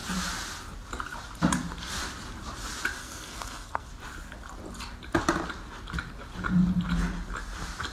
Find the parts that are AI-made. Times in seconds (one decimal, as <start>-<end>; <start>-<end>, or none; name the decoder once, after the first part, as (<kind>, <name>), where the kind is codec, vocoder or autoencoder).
3.0-3.9 (codec, SNAC)